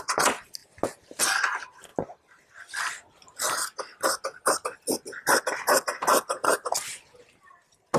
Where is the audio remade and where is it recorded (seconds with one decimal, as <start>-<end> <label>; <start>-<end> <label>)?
0.0-8.0 recorded